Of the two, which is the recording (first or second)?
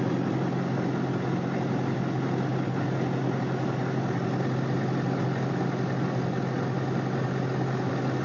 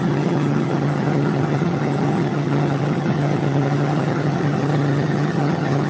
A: first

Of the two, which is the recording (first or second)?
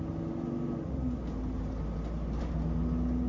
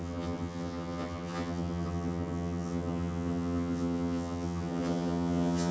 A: first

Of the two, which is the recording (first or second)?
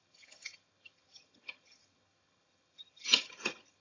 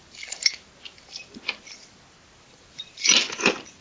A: second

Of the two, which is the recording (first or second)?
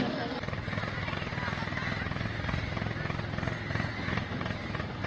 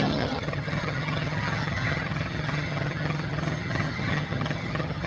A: first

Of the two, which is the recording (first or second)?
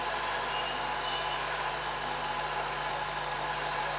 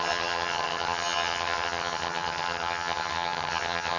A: first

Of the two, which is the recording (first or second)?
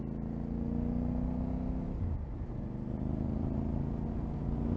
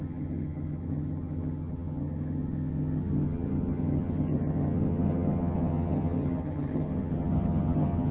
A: first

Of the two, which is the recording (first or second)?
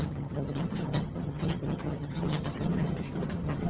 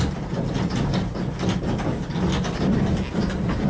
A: second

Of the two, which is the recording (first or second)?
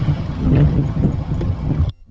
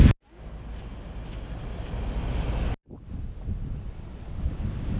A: second